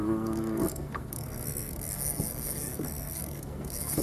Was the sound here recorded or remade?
remade